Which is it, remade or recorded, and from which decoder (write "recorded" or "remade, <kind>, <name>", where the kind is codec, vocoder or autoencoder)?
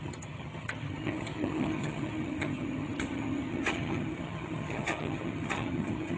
remade, vocoder, HiFi-GAN